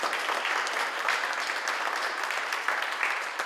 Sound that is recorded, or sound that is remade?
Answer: recorded